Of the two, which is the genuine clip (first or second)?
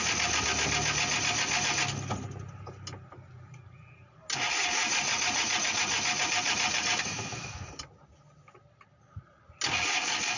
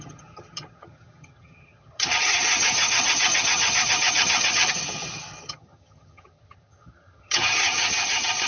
first